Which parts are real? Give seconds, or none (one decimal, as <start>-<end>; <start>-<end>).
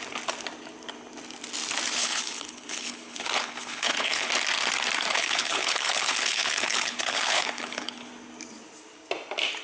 0.0-2.0; 4.3-5.1; 8.1-9.6